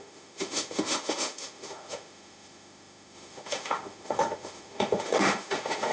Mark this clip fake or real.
fake